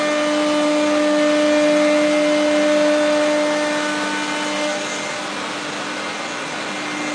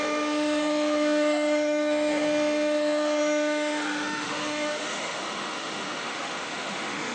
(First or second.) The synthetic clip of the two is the second